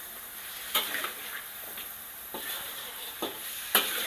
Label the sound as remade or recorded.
remade